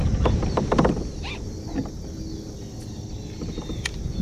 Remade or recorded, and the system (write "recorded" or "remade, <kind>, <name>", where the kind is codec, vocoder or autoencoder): recorded